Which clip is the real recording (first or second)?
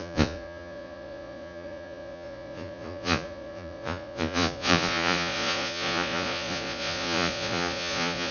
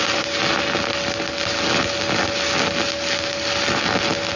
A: second